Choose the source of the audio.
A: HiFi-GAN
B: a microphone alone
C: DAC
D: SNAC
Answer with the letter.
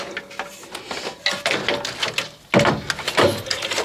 B